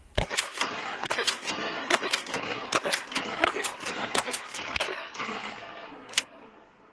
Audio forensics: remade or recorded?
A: remade